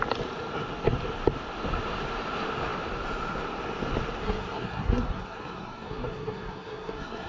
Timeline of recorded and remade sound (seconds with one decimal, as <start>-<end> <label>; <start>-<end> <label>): 0.0-4.2 recorded; 4.2-7.3 remade